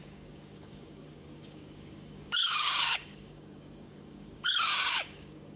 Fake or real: fake